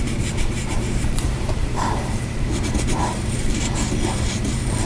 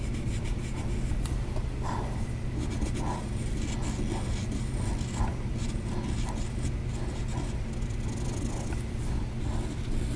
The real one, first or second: second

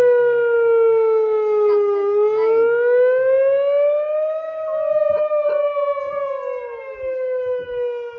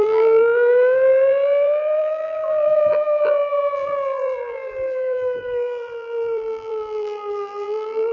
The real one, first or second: first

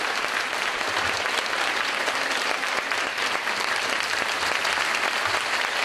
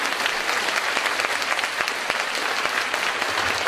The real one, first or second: second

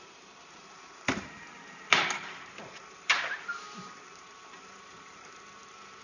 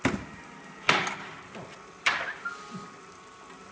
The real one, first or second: second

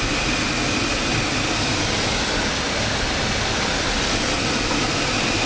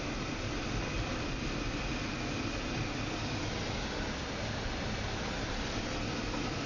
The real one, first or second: second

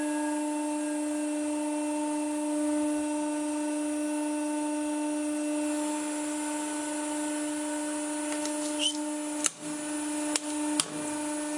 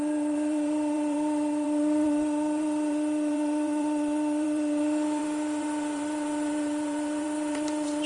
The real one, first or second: first